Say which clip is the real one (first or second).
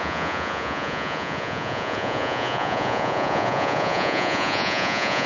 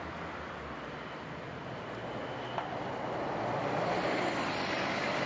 second